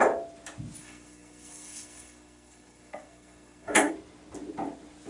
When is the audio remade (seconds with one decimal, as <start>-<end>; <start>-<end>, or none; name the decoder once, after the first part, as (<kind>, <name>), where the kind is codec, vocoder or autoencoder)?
0.8-3.9 (codec, SNAC)